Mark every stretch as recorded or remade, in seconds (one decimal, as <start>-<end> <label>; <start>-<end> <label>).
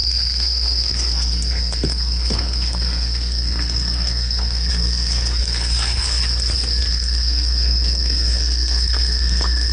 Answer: 0.0-6.2 remade; 6.2-6.9 recorded; 6.9-9.7 remade